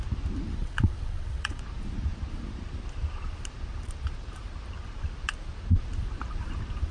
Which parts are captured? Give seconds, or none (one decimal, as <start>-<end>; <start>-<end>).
0.0-0.6; 1.6-6.9